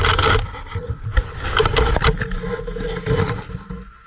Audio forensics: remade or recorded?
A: recorded